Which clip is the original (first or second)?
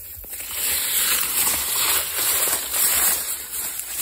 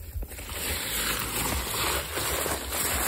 second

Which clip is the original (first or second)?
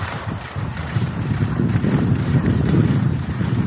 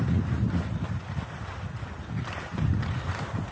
second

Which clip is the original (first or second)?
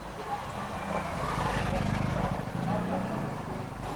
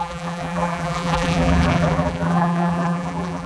first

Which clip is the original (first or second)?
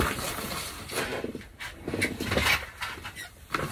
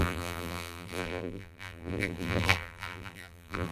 first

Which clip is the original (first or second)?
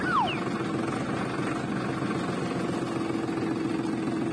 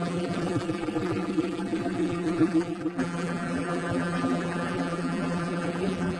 first